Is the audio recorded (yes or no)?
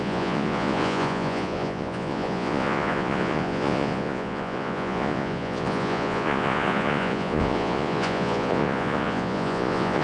no